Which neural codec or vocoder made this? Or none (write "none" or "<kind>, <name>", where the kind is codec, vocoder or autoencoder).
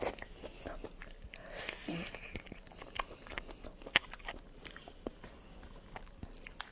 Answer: none